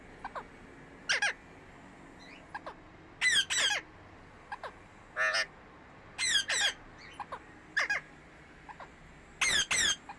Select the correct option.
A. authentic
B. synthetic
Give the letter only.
A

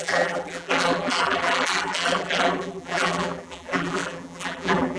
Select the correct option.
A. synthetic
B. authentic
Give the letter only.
A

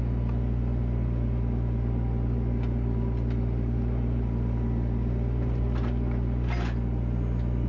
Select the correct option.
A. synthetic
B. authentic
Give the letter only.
B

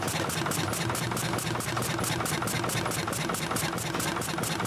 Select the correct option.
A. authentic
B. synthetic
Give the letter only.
A